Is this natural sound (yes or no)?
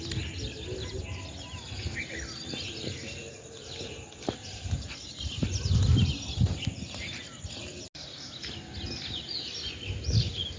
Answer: yes